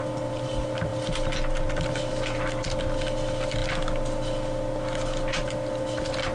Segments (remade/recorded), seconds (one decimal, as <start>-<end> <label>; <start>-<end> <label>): 0.0-6.3 recorded

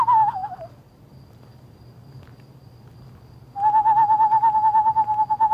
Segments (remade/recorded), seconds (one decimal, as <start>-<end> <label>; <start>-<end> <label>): 0.0-0.4 recorded; 0.4-1.0 remade; 1.0-5.5 recorded

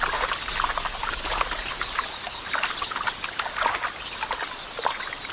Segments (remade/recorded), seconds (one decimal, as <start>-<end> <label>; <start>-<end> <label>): 0.0-0.9 recorded; 0.9-1.7 remade; 1.7-5.3 recorded

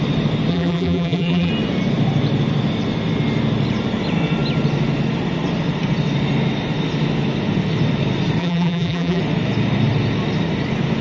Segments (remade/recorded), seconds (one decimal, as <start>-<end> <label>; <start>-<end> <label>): 0.0-0.5 recorded; 0.5-1.5 remade; 1.5-8.4 recorded; 8.4-9.2 remade; 9.2-11.0 recorded

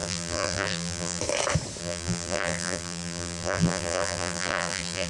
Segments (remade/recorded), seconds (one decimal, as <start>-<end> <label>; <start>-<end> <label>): 0.0-1.2 remade; 1.2-1.8 recorded; 1.8-5.1 remade

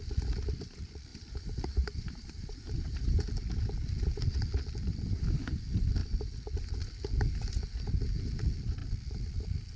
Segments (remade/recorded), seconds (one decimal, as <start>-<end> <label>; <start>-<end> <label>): 0.0-1.1 recorded; 1.1-3.2 remade; 3.2-9.8 recorded